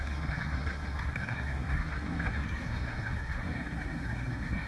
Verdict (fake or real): fake